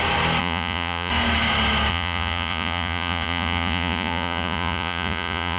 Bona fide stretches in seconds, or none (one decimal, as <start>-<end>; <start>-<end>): 0.0-0.4; 1.1-1.9